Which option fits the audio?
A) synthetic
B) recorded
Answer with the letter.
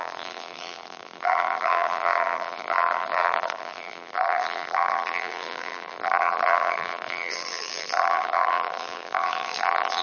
A